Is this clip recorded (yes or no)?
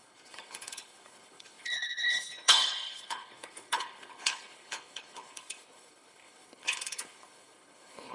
no